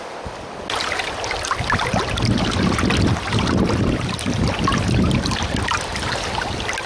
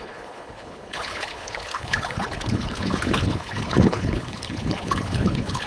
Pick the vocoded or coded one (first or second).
second